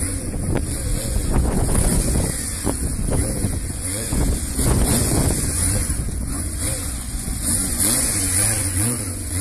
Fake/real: fake